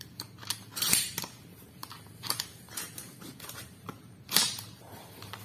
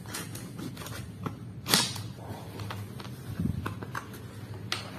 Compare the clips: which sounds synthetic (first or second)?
first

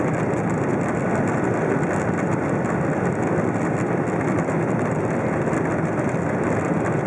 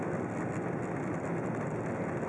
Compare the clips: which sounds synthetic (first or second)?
first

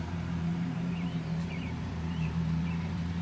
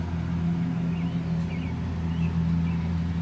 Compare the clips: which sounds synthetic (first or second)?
first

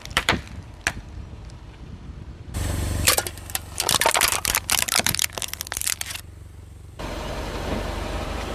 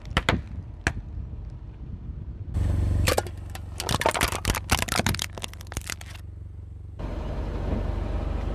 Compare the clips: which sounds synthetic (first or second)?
first